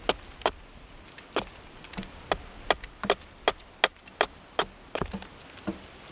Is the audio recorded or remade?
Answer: recorded